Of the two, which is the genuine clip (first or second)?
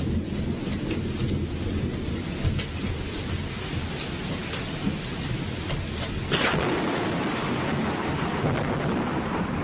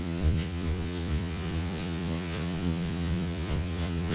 first